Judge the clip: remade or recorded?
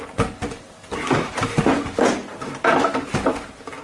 recorded